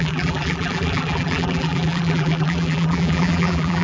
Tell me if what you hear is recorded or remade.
remade